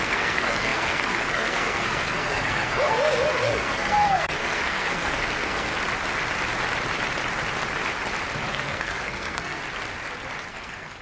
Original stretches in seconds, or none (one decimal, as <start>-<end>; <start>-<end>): 5.7-8.5; 9.6-10.5